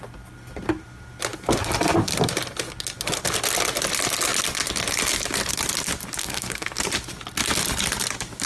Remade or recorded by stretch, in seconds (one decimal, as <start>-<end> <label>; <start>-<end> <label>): 0.0-6.2 recorded; 6.2-6.8 remade; 6.8-8.5 recorded